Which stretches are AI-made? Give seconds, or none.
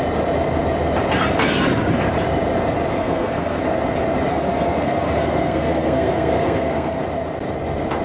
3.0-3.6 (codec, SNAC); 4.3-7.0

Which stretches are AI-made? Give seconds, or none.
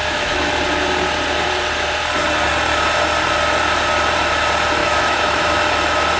0.0-0.5 (autoencoder, DAC-VAE); 4.8-5.6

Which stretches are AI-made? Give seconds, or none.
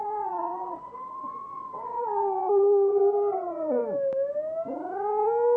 0.0-3.8 (vocoder, WaveNeXt)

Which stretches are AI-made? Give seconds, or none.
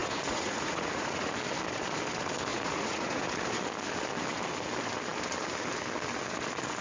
0.0-1.3 (vocoder, Vocos); 2.5-3.3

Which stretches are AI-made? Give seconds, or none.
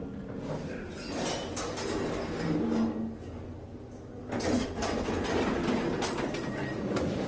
none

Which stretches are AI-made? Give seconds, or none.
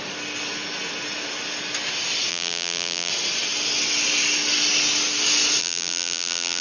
2.3-3.1 (vocoder, BigVGAN v2); 5.6-6.6